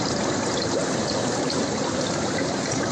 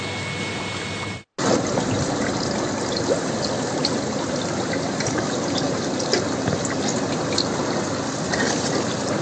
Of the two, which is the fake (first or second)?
first